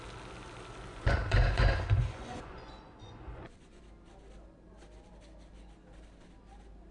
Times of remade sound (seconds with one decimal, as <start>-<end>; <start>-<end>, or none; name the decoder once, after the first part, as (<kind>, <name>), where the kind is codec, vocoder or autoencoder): 0.9-3.8 (vocoder, Vocos)